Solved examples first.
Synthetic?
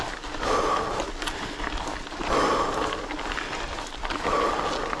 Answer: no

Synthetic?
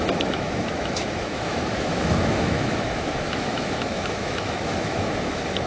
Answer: yes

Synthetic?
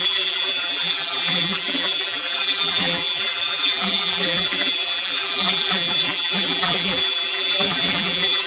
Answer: yes